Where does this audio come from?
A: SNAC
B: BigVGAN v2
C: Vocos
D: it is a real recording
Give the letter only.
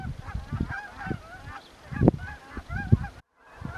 D